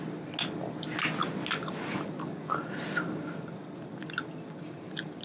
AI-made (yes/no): no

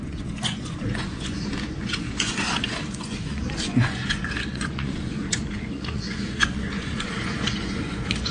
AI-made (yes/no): yes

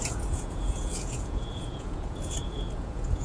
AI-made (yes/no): yes